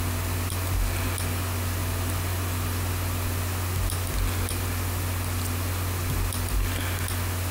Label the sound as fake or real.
real